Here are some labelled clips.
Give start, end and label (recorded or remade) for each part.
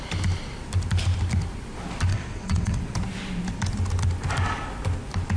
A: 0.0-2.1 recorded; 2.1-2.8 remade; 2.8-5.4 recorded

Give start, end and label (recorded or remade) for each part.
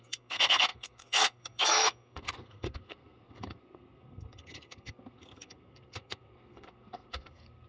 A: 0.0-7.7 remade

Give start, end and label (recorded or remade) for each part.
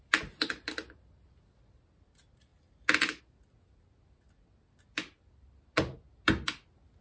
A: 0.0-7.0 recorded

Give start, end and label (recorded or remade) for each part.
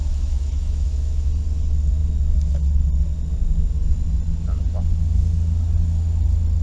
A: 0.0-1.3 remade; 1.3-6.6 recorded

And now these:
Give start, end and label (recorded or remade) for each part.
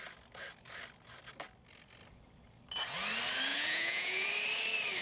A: 0.0-3.5 recorded; 3.5-4.3 remade; 4.3-5.0 recorded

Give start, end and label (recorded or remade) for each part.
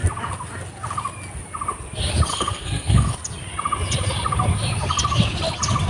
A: 0.0-2.3 recorded; 2.3-3.1 remade; 3.1-5.9 recorded